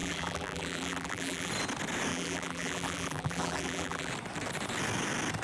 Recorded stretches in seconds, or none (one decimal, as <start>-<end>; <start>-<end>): 1.5-2.1; 4.1-5.4